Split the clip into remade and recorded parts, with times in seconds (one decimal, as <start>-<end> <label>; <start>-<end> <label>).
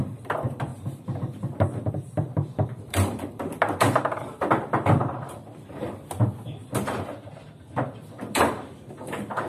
0.0-9.5 remade